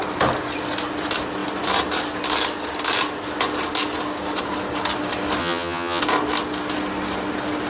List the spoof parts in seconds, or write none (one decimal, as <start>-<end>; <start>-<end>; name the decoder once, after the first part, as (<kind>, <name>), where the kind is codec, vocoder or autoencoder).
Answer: 5.4-6.0 (vocoder, HiFi-GAN)